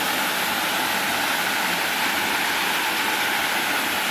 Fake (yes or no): no